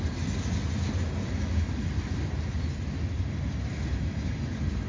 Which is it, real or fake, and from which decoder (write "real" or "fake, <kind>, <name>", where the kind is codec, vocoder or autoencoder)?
real